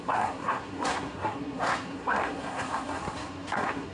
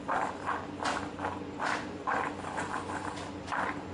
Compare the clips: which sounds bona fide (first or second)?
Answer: second